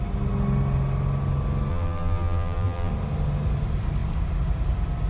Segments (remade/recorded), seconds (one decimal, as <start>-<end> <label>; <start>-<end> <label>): 0.0-1.7 recorded; 1.7-2.9 remade; 2.9-5.1 recorded